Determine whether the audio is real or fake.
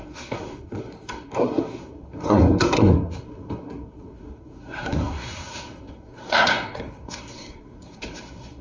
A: fake